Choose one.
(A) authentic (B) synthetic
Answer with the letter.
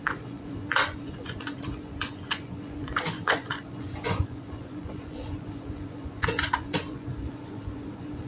B